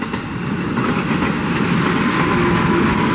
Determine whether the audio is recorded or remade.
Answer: recorded